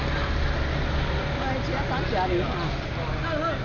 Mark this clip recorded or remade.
recorded